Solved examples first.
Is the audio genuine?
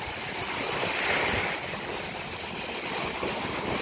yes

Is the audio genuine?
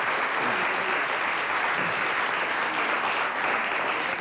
yes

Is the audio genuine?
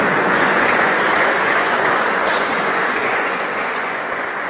no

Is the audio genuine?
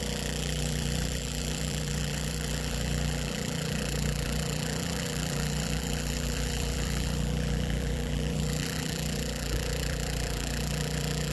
no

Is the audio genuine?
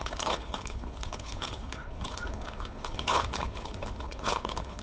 no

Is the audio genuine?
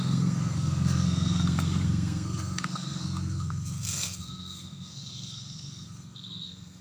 no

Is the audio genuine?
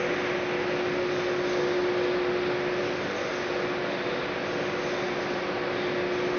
yes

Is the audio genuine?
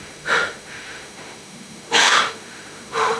no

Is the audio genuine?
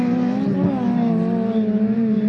yes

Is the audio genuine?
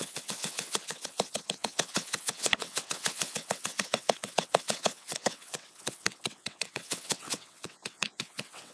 no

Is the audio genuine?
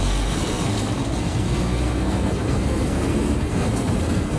no